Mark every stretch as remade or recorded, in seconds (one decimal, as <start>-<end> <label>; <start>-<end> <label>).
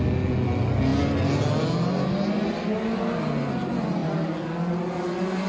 0.0-5.5 recorded